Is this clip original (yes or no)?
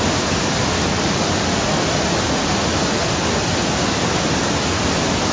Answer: yes